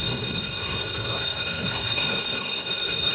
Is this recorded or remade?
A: remade